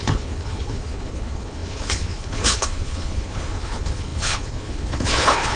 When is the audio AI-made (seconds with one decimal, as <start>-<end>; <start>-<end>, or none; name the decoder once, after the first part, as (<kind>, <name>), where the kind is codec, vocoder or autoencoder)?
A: 0.0-5.6 (codec, HILCodec)